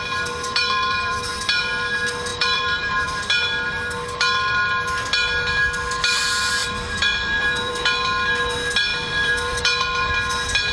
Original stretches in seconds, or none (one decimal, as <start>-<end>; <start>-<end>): 0.0-0.6; 1.3-2.3; 3.2-6.6; 7.7-8.9; 9.6-10.7